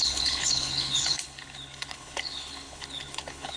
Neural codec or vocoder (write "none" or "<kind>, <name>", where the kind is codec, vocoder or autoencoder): codec, HILCodec